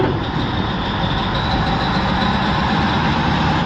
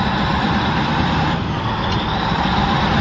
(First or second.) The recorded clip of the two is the first